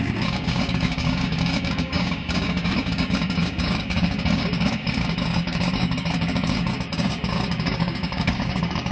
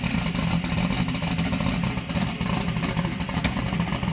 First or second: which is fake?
first